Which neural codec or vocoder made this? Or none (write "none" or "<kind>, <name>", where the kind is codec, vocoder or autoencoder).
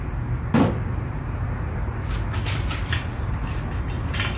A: none